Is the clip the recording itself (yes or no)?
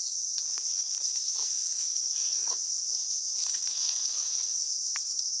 no